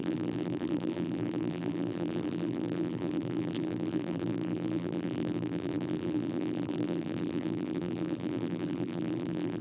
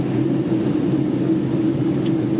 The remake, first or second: first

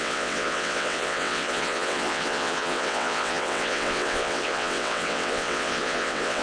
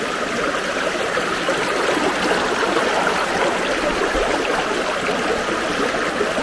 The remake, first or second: first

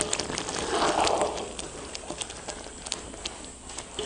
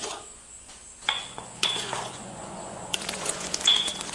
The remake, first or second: second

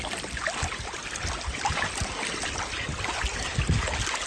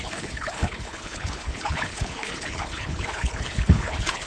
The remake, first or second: second